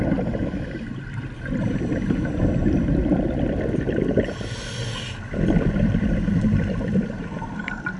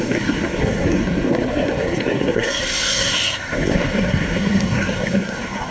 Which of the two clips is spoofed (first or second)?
second